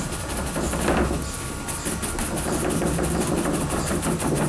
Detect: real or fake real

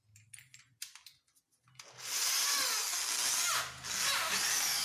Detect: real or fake real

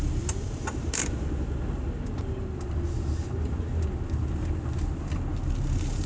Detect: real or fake real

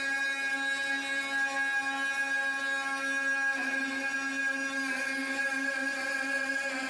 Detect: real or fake real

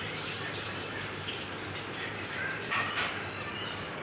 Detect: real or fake fake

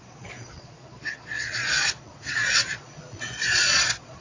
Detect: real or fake fake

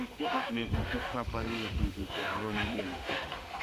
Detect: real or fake fake